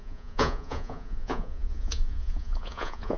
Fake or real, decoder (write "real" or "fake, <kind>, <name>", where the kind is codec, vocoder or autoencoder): fake, vocoder, Vocos